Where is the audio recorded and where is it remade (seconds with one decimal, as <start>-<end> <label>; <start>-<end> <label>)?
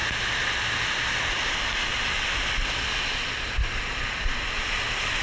0.0-5.2 recorded